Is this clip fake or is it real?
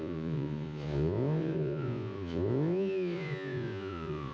fake